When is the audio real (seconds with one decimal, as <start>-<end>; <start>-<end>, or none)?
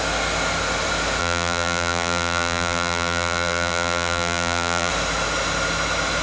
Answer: 0.0-1.2; 4.9-6.2